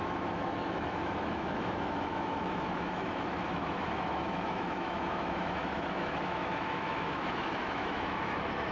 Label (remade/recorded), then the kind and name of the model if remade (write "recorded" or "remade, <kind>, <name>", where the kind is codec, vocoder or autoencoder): remade, autoencoder, DAC-VAE